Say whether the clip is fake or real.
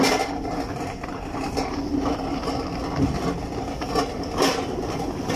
real